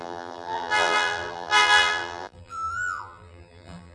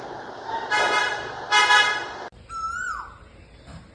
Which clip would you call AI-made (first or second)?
first